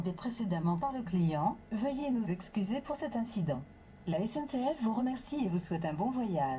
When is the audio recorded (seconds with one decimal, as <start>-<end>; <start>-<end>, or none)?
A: 0.0-2.0; 5.0-6.6